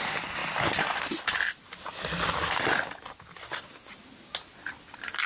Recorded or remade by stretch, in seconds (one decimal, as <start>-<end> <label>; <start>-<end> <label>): 0.0-3.4 recorded; 3.4-3.9 remade; 3.9-5.3 recorded